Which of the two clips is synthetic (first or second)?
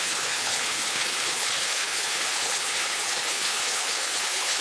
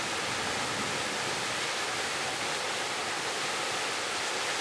first